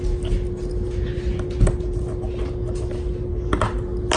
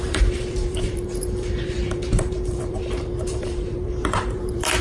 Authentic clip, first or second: first